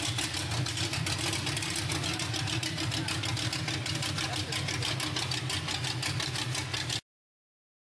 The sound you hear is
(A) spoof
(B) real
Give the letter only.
B